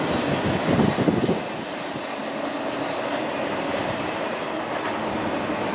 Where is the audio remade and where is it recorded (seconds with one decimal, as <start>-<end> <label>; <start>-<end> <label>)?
0.0-5.7 recorded